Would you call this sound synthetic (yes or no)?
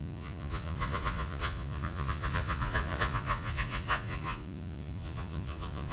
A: yes